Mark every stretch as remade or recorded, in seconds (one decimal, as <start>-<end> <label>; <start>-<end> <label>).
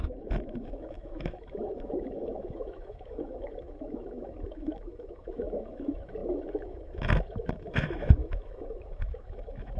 0.0-9.8 remade